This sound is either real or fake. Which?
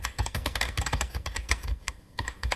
fake